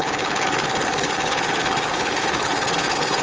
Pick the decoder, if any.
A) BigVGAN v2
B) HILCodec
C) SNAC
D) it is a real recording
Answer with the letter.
B